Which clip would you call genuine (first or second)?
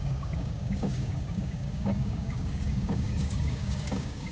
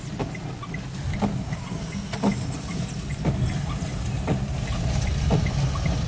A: second